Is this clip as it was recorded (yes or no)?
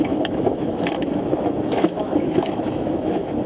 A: no